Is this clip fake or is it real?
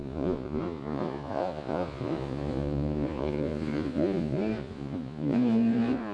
fake